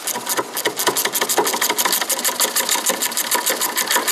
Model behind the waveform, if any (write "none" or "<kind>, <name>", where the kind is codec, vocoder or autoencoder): none